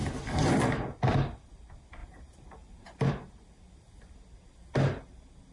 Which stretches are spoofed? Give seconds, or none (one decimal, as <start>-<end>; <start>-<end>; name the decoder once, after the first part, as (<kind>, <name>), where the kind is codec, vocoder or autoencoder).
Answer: 2.0-3.1 (vocoder, BigVGAN v2)